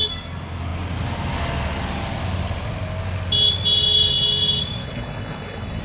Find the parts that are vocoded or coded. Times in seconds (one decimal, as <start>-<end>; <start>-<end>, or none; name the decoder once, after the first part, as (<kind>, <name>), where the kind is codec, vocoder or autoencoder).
4.8-5.8 (codec, HILCodec)